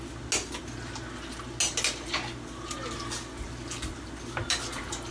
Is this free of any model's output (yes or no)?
yes